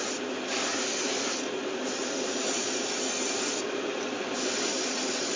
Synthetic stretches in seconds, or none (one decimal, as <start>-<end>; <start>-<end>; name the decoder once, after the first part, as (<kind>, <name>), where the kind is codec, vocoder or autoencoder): none